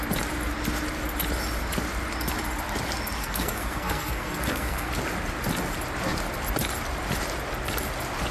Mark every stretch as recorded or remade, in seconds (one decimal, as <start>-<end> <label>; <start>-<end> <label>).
0.0-3.2 recorded; 3.2-4.9 remade; 4.9-8.3 recorded